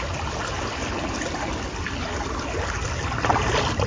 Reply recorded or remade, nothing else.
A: recorded